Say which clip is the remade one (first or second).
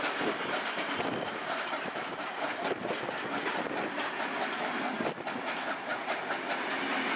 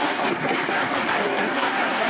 second